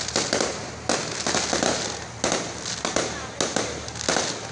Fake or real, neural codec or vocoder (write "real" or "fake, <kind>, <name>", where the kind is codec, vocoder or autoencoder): real